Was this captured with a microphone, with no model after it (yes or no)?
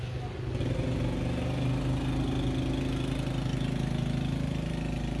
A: yes